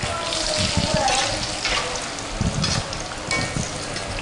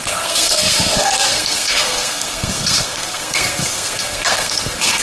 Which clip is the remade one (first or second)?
second